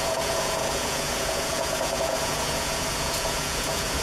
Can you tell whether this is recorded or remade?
remade